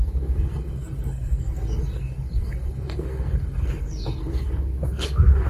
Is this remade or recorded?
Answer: remade